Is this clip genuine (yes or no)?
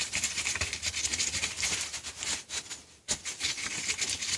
yes